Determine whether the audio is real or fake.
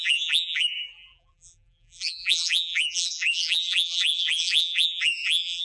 fake